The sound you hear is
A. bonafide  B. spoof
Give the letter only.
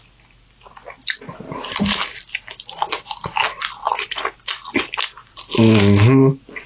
A